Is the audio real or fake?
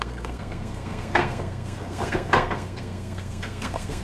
fake